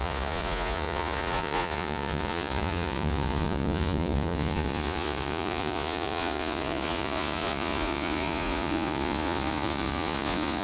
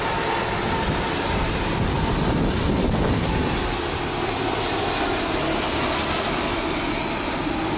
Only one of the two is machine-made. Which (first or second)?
first